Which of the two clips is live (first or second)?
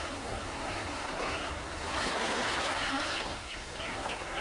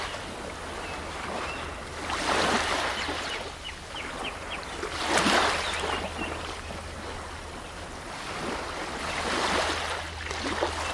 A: second